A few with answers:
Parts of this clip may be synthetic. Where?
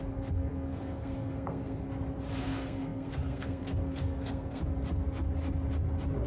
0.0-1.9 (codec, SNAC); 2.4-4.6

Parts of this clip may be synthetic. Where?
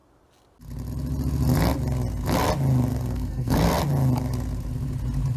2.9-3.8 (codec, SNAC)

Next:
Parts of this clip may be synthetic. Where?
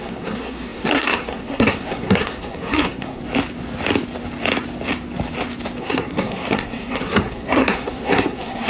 0.0-3.2 (codec, SNAC); 5.8-8.7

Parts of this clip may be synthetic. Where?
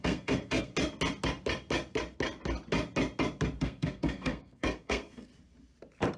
0.0-0.7 (codec, SNAC); 3.6-5.3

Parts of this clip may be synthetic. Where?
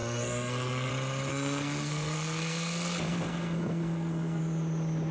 0.0-0.9 (codec, SNAC); 1.3-4.4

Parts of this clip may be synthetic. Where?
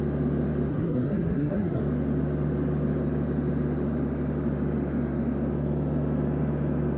0.7-1.8 (codec, SNAC)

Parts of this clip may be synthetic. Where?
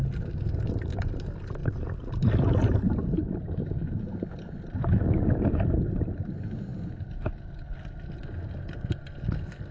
none